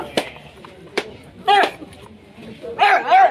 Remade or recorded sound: remade